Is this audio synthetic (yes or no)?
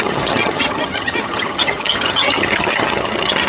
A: yes